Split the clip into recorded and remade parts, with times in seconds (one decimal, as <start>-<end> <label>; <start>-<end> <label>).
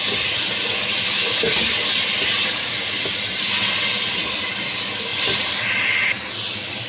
0.0-6.9 recorded